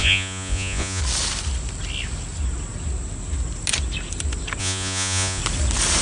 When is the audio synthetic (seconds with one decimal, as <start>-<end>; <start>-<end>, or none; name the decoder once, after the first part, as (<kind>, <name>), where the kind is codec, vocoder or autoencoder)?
0.0-1.0 (vocoder, Vocos); 4.6-5.4

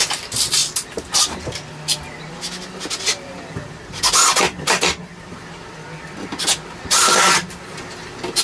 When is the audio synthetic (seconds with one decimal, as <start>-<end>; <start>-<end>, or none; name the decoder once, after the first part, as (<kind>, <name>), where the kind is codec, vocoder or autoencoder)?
none